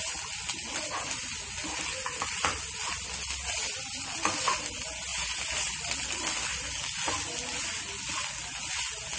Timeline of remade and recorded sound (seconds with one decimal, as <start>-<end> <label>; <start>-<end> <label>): 0.0-5.1 recorded; 5.1-5.7 remade; 5.7-9.2 recorded